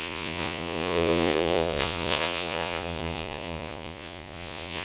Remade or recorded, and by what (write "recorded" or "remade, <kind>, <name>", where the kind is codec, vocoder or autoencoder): remade, vocoder, Vocos